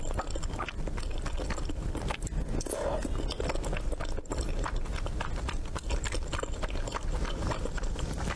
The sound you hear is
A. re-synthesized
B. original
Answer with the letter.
B